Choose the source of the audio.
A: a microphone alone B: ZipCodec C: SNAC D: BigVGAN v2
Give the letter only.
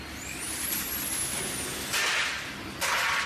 A